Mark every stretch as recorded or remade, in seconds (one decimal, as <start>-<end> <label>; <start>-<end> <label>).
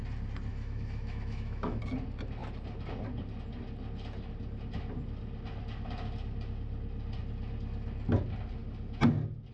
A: 0.0-0.5 recorded; 0.5-1.8 remade; 1.8-9.5 recorded